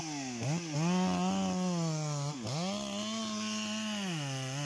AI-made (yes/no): no